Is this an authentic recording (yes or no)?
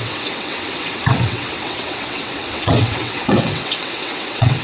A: no